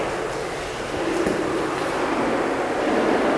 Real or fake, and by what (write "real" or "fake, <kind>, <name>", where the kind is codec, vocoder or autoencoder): real